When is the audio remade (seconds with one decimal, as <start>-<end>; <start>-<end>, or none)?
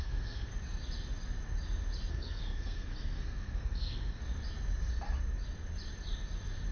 0.0-0.5; 2.1-4.2